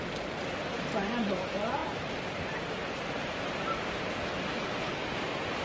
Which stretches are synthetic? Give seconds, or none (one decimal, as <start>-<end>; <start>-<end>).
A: none